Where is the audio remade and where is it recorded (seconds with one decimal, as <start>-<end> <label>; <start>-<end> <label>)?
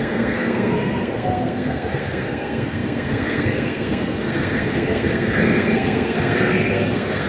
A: 0.0-7.3 remade